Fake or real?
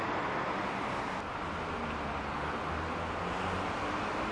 real